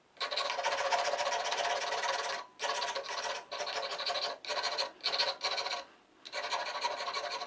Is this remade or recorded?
recorded